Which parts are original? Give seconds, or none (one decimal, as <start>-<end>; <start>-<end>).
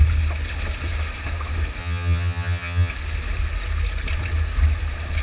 0.0-1.8; 2.9-5.2